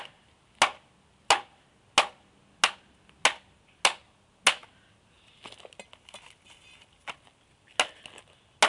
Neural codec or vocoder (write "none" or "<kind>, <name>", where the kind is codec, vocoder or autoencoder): none